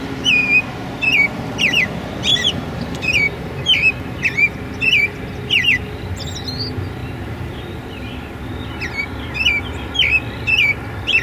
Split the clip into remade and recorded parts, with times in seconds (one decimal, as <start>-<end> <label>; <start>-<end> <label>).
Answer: 0.0-2.3 recorded; 2.3-4.2 remade; 4.2-7.0 recorded; 7.0-7.8 remade; 7.8-11.2 recorded